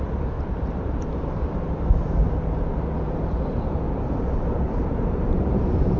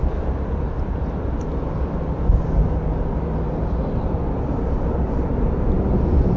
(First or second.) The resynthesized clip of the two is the first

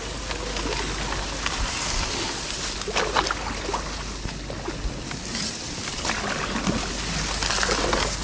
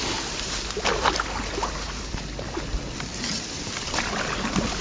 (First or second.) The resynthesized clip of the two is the second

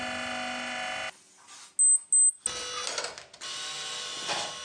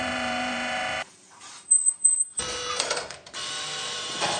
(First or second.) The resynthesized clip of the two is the second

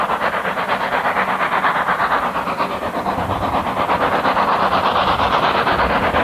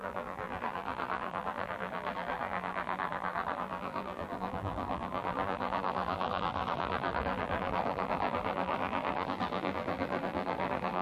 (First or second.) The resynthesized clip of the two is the second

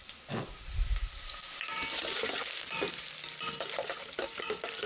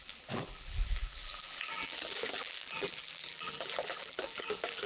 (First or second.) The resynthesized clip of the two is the second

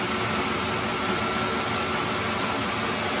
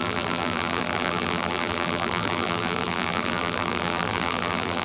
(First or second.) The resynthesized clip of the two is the second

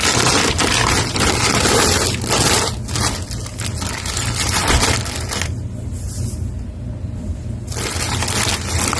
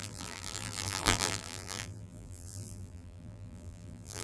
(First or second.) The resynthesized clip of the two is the second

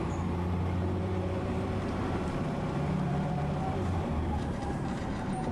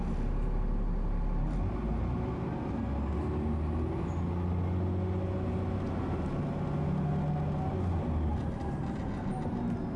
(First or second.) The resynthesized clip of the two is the first